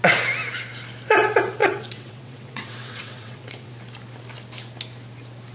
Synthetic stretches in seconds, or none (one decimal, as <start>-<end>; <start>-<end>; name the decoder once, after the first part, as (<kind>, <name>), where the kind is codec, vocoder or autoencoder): 1.6-3.7 (vocoder, WaveNeXt)